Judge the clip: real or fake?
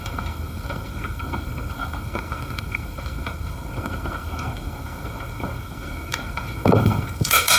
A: fake